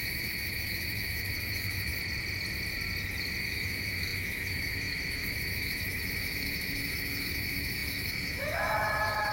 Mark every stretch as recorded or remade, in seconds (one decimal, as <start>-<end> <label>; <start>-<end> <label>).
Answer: 0.0-1.9 remade; 1.9-3.4 recorded; 3.4-9.3 remade

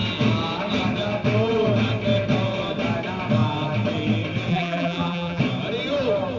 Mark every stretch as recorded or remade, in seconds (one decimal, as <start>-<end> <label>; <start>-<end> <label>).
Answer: 0.0-4.5 recorded; 4.5-5.4 remade; 5.4-6.4 recorded

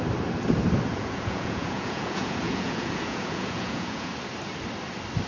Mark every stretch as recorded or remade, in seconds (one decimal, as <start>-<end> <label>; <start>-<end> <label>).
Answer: 0.0-0.9 recorded; 0.9-4.1 remade; 4.1-5.3 recorded

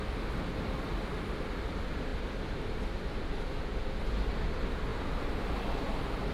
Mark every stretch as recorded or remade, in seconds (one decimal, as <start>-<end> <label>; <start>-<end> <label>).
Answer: 0.0-6.3 recorded

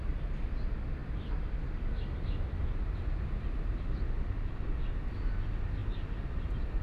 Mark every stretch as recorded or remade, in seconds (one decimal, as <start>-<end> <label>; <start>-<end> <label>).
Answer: 0.0-6.8 recorded